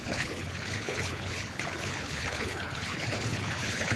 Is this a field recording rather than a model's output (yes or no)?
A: no